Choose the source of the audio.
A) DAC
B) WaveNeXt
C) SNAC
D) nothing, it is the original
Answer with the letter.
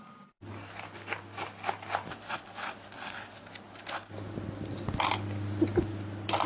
D